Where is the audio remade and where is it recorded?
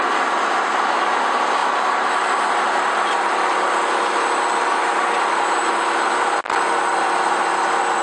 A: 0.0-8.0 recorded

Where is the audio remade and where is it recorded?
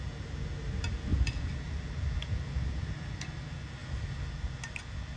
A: 0.0-1.1 recorded; 1.1-1.6 remade; 1.6-3.8 recorded; 3.8-4.3 remade; 4.3-5.2 recorded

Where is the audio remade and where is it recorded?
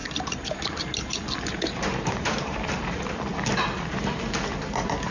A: 0.0-3.1 remade; 3.1-5.1 recorded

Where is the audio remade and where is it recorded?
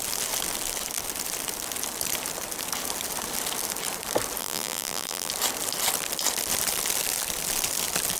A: 0.0-4.4 recorded; 4.4-5.3 remade; 5.3-8.2 recorded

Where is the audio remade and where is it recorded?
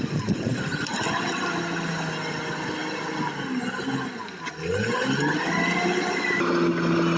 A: 0.0-0.5 recorded; 0.5-1.6 remade; 1.6-7.2 recorded